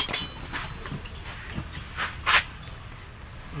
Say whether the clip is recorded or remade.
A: recorded